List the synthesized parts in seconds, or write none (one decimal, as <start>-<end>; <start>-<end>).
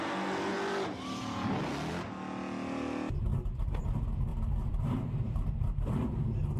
4.3-5.9